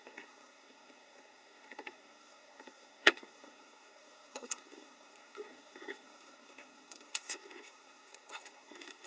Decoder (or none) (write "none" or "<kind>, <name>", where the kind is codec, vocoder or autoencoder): codec, SNAC